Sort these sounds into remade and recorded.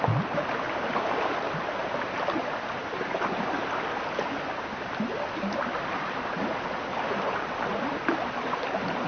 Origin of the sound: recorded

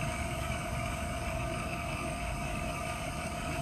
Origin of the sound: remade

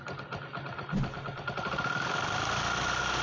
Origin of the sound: recorded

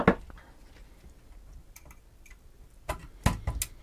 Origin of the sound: recorded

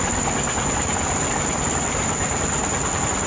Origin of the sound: recorded